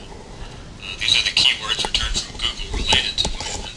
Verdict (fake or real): real